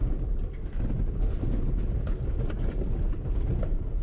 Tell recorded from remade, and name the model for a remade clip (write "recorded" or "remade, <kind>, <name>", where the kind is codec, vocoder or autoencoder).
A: remade, vocoder, BigVGAN v2